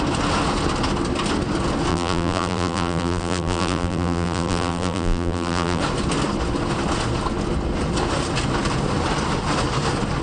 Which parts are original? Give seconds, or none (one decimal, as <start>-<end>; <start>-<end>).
0.0-1.9; 5.8-10.2